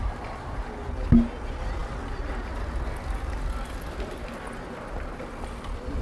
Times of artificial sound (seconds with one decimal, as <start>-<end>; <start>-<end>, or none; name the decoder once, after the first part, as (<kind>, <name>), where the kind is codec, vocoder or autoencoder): none